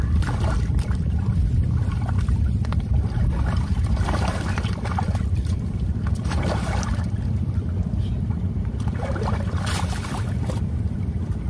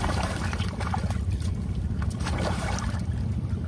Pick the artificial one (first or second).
first